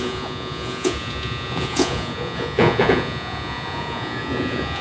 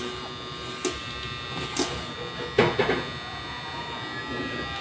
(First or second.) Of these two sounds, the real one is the second